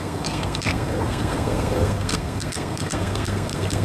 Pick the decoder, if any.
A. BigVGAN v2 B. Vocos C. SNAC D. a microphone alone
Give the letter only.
C